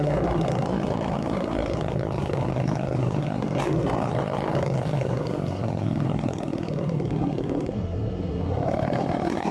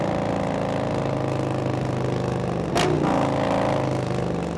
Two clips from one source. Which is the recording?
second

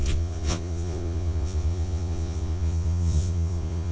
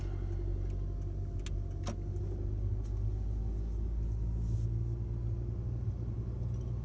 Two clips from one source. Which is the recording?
second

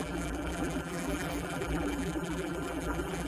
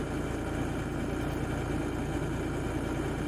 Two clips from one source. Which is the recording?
second